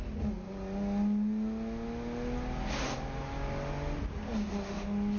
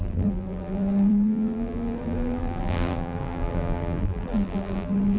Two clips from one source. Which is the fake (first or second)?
second